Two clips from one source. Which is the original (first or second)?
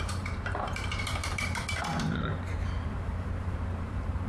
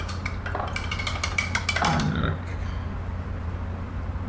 second